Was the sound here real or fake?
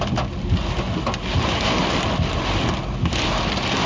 real